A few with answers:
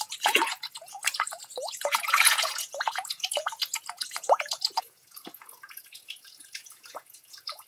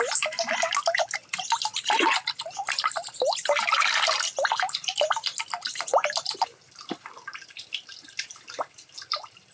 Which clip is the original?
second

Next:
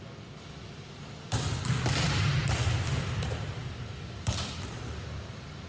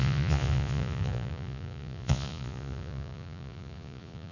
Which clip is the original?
first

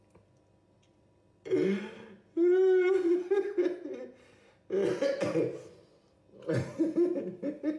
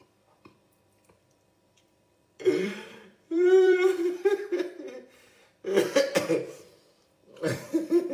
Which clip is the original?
first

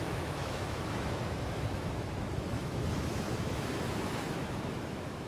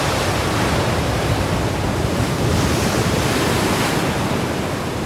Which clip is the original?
second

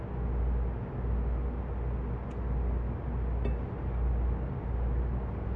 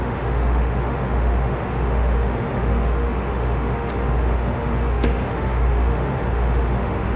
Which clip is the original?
first